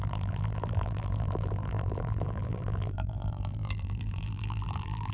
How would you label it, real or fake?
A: fake